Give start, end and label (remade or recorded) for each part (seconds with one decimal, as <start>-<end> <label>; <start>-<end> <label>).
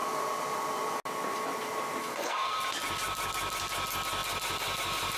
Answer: 0.0-2.0 recorded; 2.0-2.6 remade; 2.6-5.2 recorded